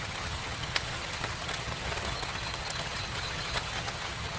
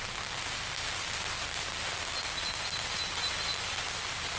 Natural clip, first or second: second